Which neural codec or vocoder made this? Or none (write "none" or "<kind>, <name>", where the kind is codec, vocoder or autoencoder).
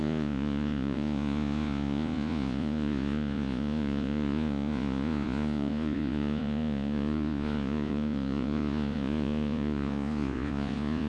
vocoder, Vocos